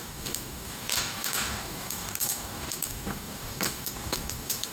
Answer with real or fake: fake